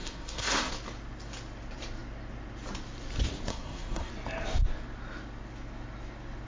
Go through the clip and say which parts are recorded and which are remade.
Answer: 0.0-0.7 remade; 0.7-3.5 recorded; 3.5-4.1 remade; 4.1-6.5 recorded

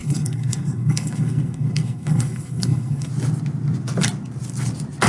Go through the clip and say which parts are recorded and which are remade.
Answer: 0.0-3.1 remade; 3.1-5.1 recorded